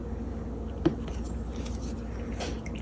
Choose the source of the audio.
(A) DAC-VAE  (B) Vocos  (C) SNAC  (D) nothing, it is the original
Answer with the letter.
D